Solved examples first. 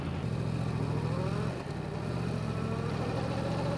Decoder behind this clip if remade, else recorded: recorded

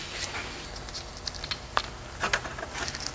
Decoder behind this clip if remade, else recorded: recorded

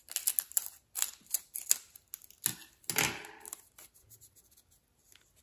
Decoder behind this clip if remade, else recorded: recorded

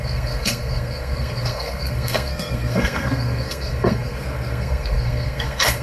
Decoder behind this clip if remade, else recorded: remade, codec, SNAC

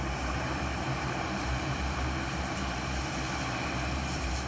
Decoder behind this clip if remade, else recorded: remade, vocoder, BigVGAN v2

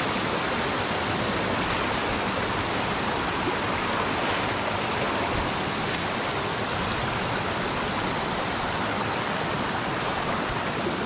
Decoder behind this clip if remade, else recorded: recorded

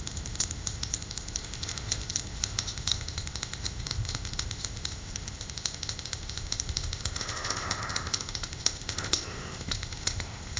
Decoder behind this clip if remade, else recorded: remade, codec, ZipCodec